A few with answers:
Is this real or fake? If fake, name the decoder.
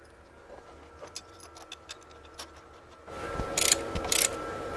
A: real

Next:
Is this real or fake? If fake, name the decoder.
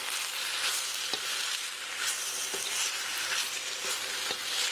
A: real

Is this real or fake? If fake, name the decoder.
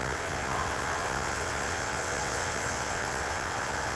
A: fake, vocoder, WaveNeXt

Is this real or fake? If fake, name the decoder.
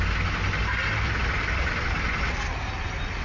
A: real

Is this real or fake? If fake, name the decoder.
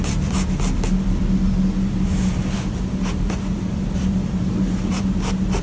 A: real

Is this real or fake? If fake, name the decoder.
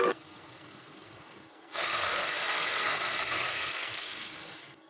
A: fake, codec, SNAC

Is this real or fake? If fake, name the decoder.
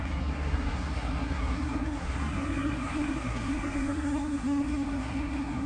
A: fake, codec, SNAC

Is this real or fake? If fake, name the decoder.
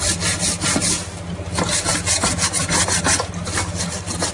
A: real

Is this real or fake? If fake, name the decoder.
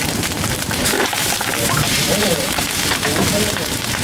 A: fake, vocoder, BigVGAN v2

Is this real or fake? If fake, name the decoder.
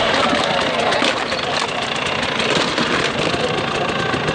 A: real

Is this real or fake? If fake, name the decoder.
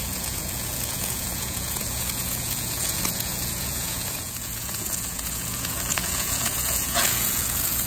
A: fake, vocoder, Vocos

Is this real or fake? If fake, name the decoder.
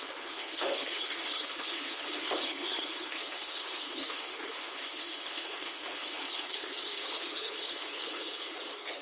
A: fake, codec, HILCodec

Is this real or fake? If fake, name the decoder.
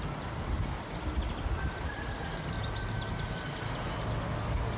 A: real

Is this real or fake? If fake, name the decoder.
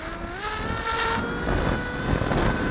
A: real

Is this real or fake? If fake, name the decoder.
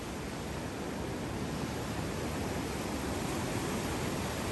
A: real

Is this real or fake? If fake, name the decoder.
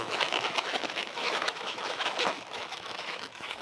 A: fake, autoencoder, DAC-VAE